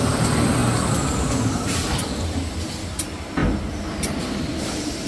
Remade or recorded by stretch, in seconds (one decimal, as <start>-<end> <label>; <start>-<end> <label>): 0.0-5.1 recorded